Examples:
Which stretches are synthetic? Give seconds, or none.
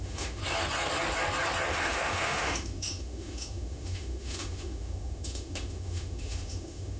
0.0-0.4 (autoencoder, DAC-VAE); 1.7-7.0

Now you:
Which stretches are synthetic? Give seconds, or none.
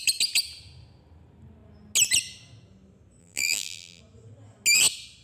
3.2-4.0 (vocoder, BigVGAN v2)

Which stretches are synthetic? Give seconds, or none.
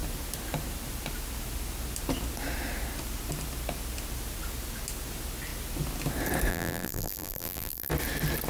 6.5-7.9 (vocoder, BigVGAN v2)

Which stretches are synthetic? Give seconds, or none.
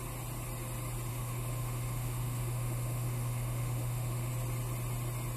1.1-4.3 (autoencoder, DAC-VAE)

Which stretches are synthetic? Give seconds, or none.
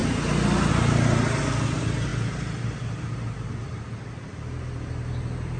none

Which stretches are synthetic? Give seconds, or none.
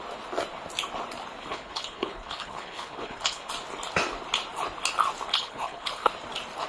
1.4-3.5 (codec, HILCodec); 5.3-6.1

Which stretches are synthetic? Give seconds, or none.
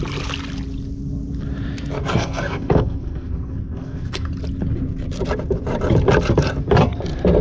2.0-4.3 (codec, SNAC)